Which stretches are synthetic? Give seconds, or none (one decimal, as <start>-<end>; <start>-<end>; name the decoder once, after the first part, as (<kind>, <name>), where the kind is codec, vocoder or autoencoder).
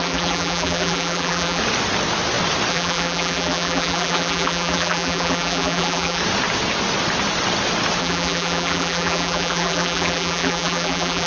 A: 0.0-1.6 (vocoder, BigVGAN v2); 2.7-6.2; 8.0-11.3